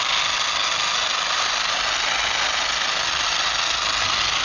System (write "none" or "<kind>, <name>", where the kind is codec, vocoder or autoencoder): none